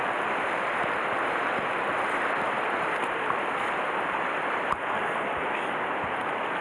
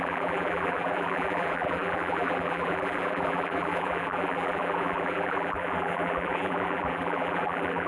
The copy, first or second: second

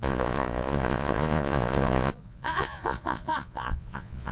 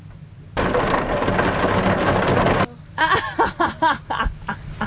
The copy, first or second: first